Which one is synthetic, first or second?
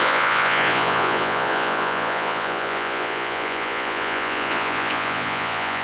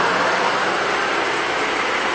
first